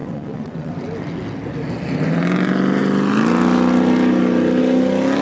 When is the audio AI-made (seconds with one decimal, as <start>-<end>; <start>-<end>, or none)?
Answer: 0.0-0.7